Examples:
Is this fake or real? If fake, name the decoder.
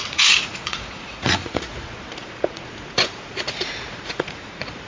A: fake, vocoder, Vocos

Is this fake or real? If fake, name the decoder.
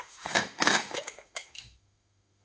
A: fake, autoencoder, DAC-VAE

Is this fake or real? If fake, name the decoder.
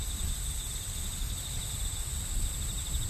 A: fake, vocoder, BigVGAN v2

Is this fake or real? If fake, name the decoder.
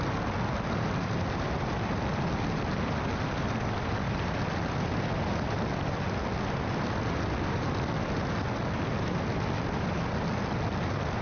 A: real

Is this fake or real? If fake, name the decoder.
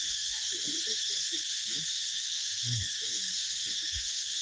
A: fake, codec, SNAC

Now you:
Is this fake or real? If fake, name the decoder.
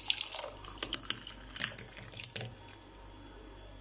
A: real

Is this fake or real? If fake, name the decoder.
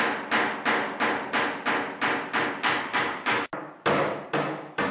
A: real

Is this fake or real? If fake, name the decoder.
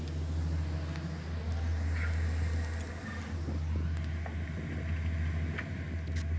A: real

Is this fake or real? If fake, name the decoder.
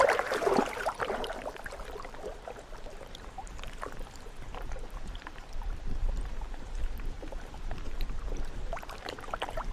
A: fake, vocoder, BigVGAN v2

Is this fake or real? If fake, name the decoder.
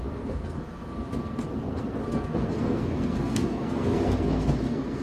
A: fake, codec, SNAC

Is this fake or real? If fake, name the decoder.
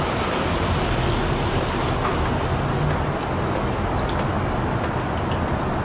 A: real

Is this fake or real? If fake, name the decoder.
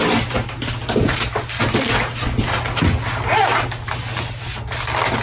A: real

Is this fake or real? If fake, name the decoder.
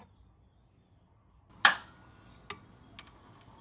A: real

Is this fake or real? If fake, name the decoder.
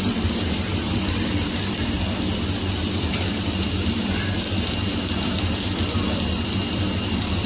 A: fake, vocoder, BigVGAN v2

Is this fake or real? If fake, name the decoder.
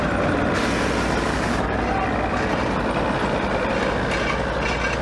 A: real